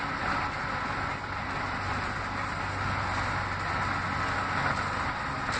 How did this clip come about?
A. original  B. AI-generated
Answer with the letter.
A